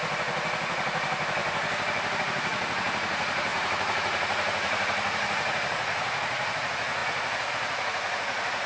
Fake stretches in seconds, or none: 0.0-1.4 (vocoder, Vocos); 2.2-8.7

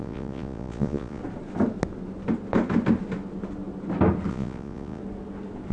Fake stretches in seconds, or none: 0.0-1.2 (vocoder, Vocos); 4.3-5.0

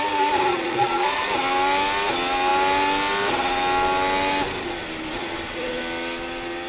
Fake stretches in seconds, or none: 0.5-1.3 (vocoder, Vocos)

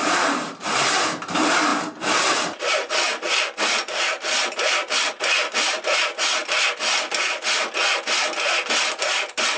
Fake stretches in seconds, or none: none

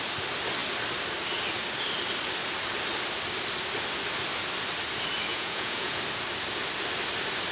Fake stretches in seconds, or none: 5.3-6.0 (vocoder, Vocos)

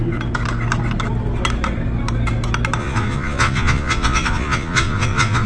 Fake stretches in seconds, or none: 2.8-5.5 (vocoder, Vocos)